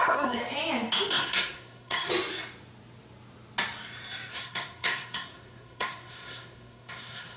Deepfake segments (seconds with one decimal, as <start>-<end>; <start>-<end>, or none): 0.0-0.4; 1.1-2.1; 4.3-7.4